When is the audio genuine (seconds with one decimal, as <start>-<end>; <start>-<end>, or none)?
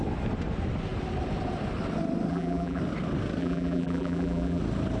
0.0-2.3; 2.8-3.4; 4.6-5.0